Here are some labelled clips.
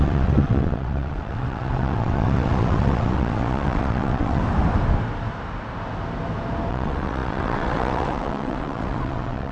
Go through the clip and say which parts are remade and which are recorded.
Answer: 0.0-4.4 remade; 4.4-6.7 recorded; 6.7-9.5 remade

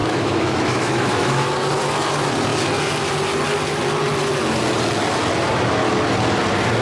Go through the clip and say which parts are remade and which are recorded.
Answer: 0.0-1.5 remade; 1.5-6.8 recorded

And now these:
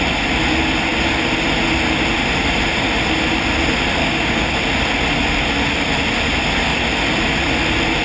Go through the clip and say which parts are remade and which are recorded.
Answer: 0.0-4.0 recorded; 4.0-4.5 remade; 4.5-8.0 recorded

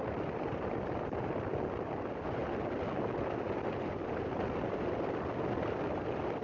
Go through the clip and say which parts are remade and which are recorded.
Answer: 0.0-6.4 recorded